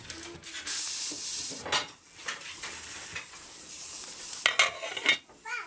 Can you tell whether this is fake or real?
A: real